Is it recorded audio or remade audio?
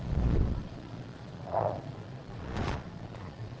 remade